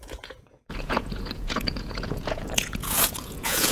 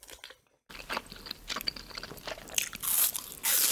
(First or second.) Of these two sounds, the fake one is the first